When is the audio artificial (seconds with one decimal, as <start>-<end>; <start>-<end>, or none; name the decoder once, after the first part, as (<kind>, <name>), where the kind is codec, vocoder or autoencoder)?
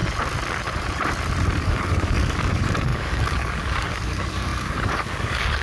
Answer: 1.6-5.6 (codec, DAC)